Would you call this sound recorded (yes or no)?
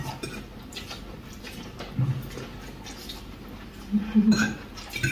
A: yes